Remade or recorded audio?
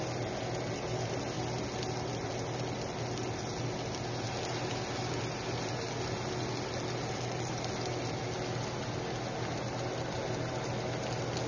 recorded